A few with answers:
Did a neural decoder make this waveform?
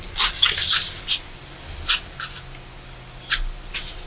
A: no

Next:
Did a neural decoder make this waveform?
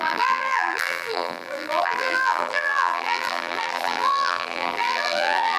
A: yes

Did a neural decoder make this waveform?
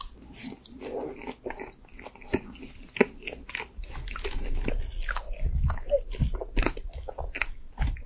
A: no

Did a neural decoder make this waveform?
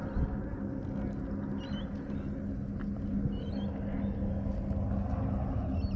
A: no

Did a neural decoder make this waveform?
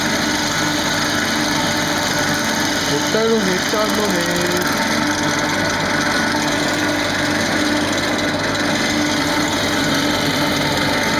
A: no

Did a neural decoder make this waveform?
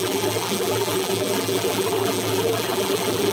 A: yes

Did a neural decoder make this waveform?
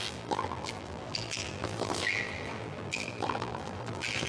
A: yes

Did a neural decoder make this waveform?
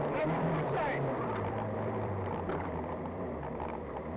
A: yes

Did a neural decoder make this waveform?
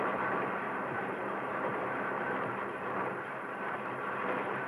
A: yes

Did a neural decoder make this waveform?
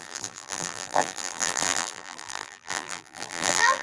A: yes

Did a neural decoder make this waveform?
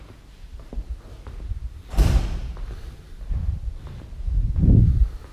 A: yes